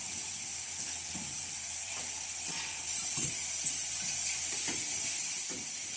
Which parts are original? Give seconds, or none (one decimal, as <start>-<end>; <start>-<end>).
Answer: 0.0-1.1